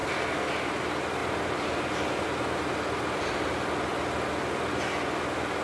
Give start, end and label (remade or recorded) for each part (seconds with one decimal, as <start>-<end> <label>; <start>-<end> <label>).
0.0-0.5 remade; 0.5-5.6 recorded